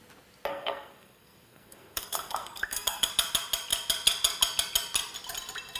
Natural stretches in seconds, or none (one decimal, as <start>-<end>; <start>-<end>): 0.0-0.5; 3.1-5.8